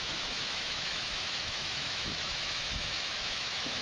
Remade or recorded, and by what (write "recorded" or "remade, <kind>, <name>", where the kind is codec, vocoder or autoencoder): remade, autoencoder, DAC-VAE